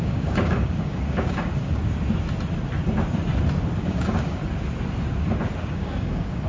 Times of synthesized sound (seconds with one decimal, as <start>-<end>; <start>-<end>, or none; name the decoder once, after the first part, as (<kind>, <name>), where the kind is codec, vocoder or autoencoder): 0.0-1.8 (codec, DAC); 3.8-4.4; 5.6-6.5